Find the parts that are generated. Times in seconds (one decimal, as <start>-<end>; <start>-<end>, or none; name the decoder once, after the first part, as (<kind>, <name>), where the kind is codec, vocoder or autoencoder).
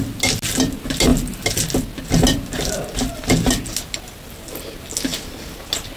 none